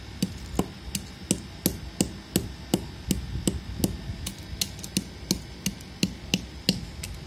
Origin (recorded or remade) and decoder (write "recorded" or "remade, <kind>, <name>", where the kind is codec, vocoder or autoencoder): recorded